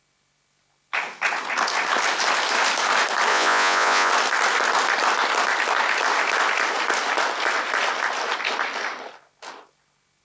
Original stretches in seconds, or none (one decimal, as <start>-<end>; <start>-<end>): 0.0-3.3; 4.1-10.2

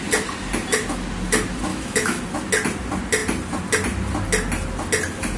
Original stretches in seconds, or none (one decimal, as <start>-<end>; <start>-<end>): 0.0-1.7; 2.2-5.4

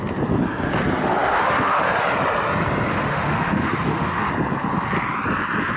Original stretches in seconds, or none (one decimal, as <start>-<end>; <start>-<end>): 0.0-1.0; 1.8-2.9; 4.3-5.8

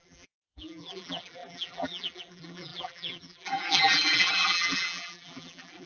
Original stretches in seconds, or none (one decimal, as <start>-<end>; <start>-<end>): none